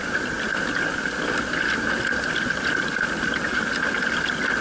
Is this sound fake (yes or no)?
no